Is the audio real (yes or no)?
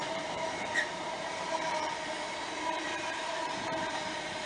no